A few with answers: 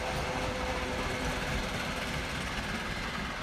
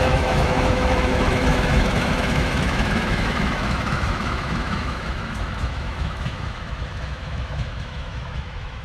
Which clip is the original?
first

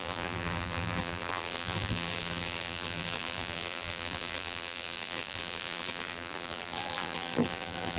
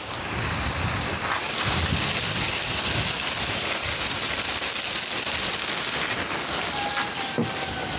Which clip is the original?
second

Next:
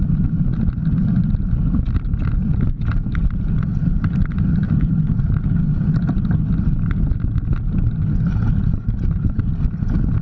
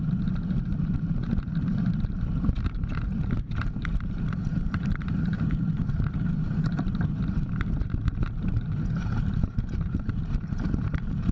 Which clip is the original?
first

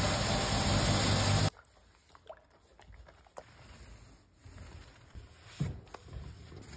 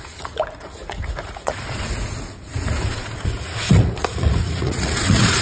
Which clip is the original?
first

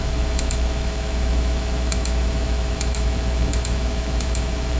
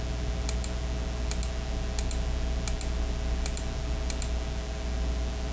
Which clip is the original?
second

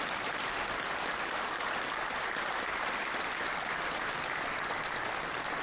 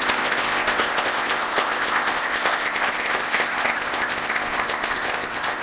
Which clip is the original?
first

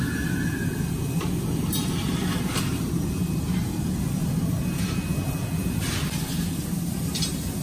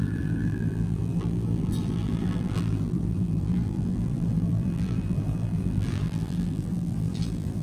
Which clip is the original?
first